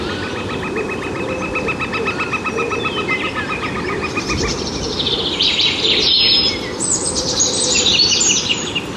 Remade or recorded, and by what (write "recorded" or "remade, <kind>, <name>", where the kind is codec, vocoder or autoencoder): recorded